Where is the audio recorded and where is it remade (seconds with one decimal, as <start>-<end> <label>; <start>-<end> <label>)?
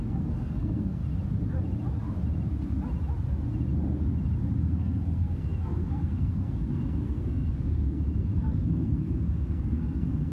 0.0-1.0 remade; 1.0-4.6 recorded; 4.6-10.3 remade